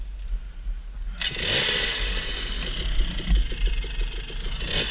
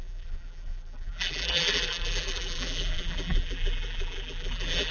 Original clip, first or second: first